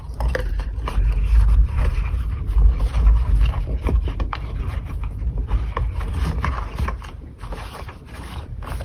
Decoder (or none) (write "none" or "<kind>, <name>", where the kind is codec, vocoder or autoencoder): vocoder, BigVGAN v2